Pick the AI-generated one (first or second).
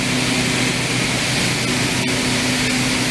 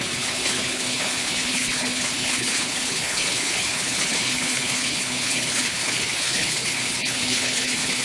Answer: second